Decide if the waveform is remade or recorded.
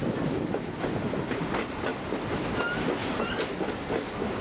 recorded